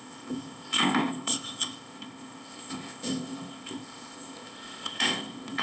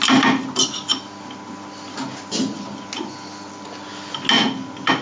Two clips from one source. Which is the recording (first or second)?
second